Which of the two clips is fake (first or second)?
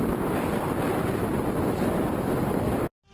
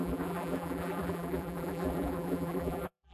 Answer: second